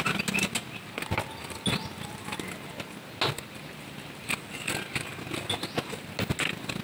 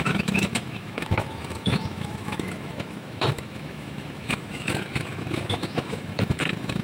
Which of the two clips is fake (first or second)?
second